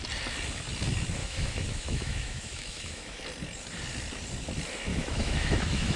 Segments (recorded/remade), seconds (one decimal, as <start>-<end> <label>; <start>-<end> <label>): 0.0-1.2 recorded; 1.2-3.2 remade; 3.2-4.9 recorded; 4.9-6.0 remade